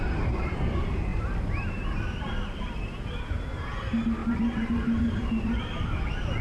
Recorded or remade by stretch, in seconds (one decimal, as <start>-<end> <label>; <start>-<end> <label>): 0.0-1.1 recorded; 1.1-2.3 remade; 2.3-4.2 recorded; 4.2-5.8 remade; 5.8-6.4 recorded